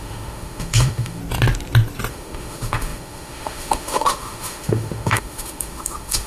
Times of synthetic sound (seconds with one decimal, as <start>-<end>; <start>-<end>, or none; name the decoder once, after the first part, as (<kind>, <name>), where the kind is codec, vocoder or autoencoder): 0.0-1.2 (autoencoder, DAC-VAE); 2.1-6.3